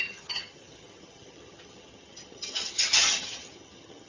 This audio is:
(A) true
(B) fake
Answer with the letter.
B